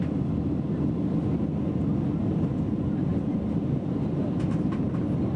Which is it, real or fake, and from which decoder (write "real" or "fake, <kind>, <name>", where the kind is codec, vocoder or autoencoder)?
real